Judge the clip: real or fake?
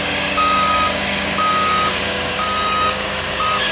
fake